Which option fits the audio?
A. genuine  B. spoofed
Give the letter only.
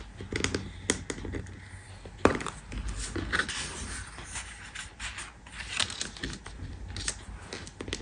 A